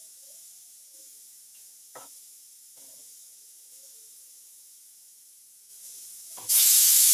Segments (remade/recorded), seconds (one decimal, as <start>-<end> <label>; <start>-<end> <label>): 0.0-7.1 remade